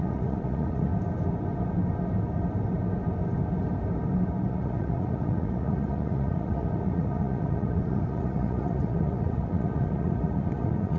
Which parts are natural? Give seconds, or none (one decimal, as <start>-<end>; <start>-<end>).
0.9-4.5